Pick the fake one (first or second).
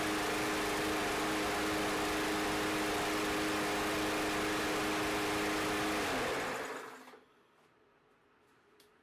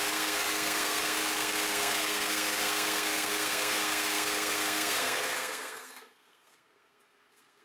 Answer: second